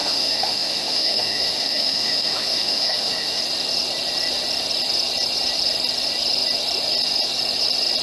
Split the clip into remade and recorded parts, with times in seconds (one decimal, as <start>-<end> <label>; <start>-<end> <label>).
0.0-3.4 remade; 3.4-8.0 recorded